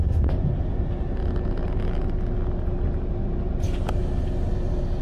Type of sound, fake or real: real